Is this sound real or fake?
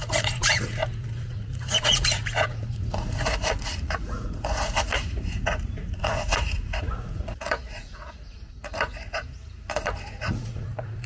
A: fake